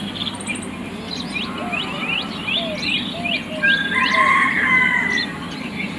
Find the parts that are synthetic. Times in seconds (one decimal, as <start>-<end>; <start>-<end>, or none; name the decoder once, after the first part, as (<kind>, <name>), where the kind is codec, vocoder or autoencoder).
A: none